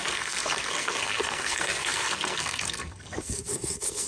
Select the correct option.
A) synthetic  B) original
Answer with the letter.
A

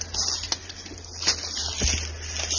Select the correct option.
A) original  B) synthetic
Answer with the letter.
A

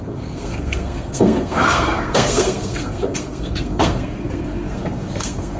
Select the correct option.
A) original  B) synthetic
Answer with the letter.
B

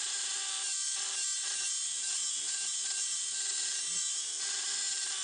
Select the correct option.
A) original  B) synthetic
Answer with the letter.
A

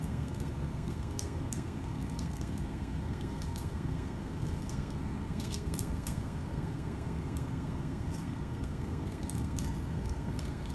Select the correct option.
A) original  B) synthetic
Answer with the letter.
B